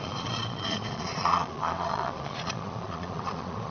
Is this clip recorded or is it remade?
remade